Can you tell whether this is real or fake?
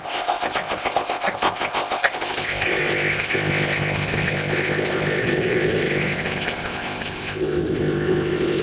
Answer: fake